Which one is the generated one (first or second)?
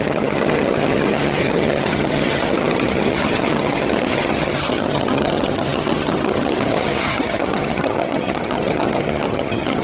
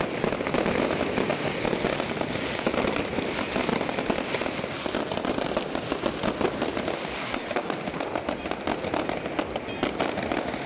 first